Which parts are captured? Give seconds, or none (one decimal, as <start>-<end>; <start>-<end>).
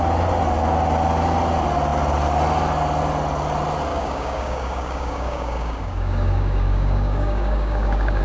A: 0.0-3.9